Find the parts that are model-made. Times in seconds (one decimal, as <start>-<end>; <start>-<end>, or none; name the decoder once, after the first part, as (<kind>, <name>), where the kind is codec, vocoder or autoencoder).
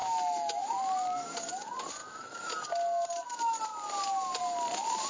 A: 0.0-0.7 (autoencoder, DAC-VAE); 2.0-2.7